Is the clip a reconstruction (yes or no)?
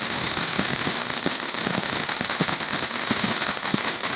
yes